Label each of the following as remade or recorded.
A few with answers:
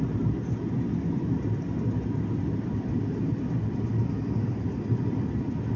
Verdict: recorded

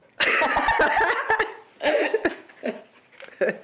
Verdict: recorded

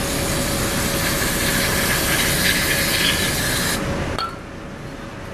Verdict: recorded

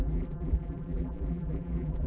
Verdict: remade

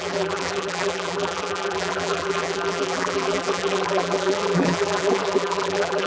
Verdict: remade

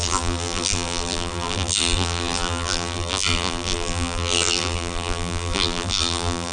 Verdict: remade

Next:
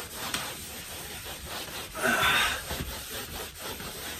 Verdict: remade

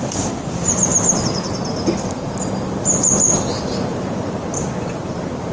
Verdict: remade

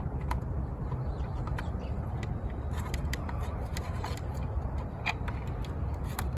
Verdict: remade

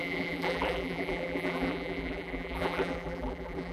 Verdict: remade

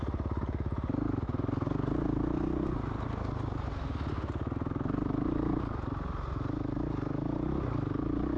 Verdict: recorded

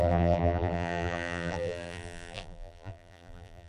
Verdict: remade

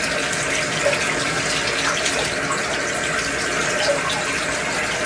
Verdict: recorded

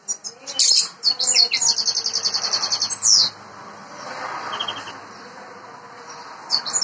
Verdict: recorded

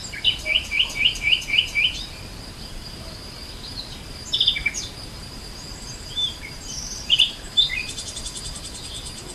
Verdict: remade